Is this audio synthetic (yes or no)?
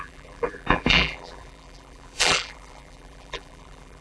yes